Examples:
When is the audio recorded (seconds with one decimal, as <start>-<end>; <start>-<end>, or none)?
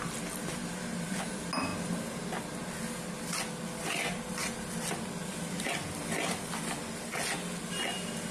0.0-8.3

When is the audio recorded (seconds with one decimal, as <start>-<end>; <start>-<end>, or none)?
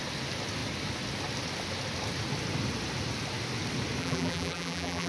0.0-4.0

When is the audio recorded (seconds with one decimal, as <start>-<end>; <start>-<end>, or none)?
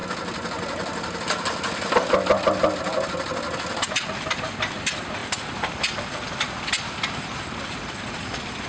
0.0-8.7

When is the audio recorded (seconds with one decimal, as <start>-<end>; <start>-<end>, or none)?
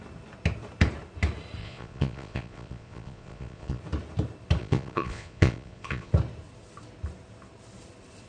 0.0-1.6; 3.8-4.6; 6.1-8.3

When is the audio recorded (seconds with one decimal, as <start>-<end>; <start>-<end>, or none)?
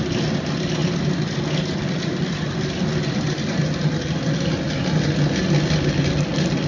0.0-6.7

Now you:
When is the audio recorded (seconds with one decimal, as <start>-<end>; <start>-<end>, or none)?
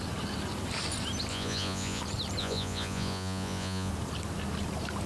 0.0-1.3; 2.0-2.4; 3.9-5.1